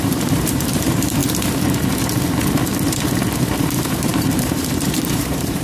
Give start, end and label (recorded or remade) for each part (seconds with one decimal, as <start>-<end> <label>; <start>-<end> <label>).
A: 0.0-1.2 remade; 1.2-3.6 recorded; 3.6-5.6 remade